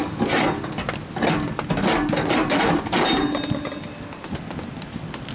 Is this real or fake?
real